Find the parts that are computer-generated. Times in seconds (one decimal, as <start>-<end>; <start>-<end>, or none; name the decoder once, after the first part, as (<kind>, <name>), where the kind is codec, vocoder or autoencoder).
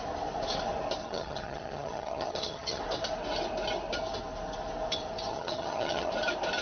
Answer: 1.0-2.8 (vocoder, HiFi-GAN); 5.3-6.1